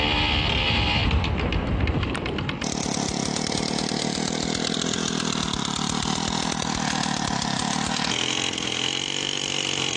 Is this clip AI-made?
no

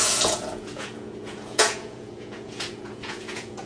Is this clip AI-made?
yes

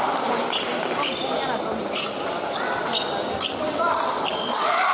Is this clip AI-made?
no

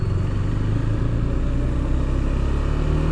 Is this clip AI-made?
no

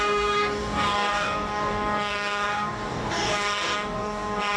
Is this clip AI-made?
yes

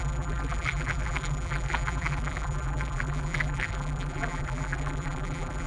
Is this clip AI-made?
yes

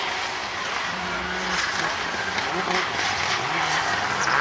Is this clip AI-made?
no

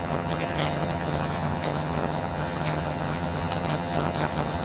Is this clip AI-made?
yes